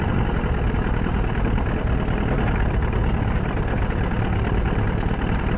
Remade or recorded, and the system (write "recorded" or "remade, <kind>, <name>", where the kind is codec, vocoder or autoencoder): recorded